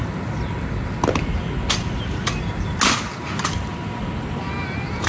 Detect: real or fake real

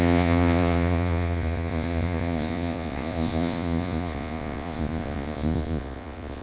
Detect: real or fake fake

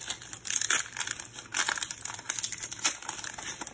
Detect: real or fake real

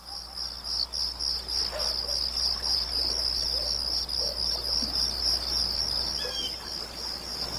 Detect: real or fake real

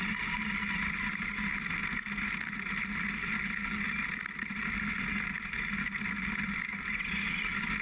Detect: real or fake real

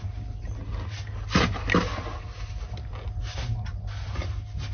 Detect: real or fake real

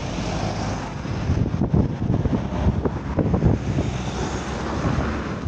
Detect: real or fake real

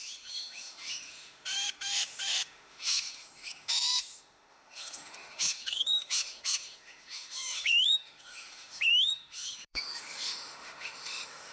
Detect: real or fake fake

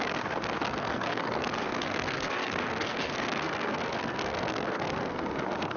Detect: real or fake fake